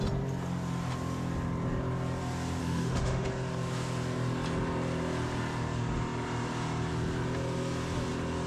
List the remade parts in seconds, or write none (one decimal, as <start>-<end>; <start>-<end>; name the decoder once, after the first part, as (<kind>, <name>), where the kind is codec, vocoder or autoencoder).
2.6-3.3 (autoencoder, DAC-VAE)